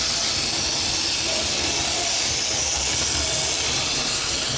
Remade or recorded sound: recorded